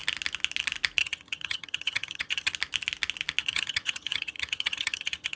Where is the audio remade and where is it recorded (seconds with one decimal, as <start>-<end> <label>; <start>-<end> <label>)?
0.0-1.0 recorded; 1.0-2.5 remade; 2.5-3.4 recorded; 3.4-5.4 remade